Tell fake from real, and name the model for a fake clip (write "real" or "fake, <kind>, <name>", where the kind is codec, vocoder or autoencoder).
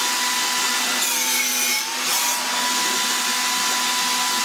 real